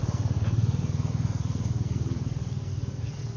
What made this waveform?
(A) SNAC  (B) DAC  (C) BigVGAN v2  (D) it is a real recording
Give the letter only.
A